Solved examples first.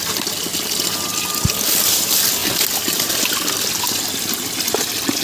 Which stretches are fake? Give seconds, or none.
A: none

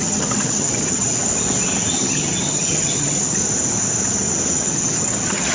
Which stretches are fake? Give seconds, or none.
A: 0.0-1.1 (vocoder, HiFi-GAN); 1.9-3.4; 4.5-5.5

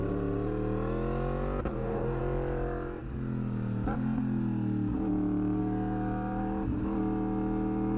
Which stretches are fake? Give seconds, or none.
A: 1.7-2.2 (codec, DAC)

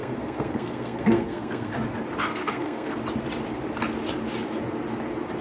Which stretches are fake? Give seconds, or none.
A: 0.0-1.7 (codec, SNAC); 2.3-3.0

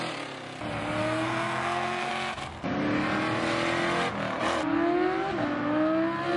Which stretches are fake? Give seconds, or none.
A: 1.0-2.1 (codec, SNAC)